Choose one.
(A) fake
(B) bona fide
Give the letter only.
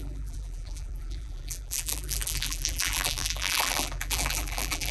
A